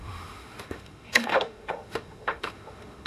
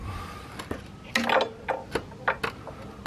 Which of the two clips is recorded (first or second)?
second